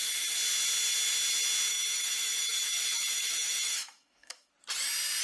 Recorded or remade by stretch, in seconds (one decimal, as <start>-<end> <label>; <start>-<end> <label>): 0.0-1.7 recorded; 1.7-4.5 remade; 4.5-5.2 recorded